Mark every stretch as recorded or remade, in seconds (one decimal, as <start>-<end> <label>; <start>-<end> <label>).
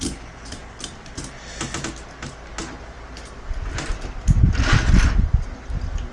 0.0-6.1 recorded